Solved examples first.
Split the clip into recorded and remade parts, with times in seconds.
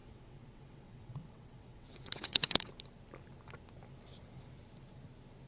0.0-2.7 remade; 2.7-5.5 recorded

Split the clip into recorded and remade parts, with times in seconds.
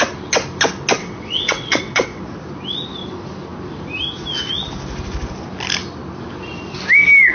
0.0-1.0 recorded; 1.0-2.2 remade; 2.2-7.3 recorded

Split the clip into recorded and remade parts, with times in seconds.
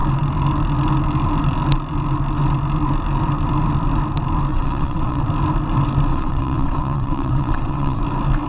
0.0-4.5 recorded; 4.5-5.2 remade; 5.2-6.1 recorded; 6.1-8.0 remade; 8.0-8.5 recorded